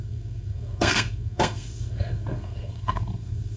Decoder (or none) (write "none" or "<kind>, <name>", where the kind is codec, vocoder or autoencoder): codec, SNAC